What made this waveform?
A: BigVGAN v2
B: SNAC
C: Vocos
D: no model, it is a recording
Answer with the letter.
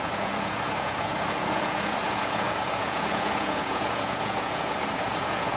C